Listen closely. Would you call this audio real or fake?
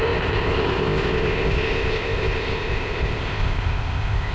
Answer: fake